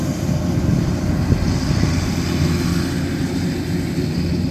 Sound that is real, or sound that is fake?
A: real